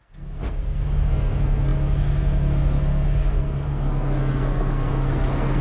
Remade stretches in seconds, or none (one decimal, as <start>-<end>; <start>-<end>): 0.0-5.6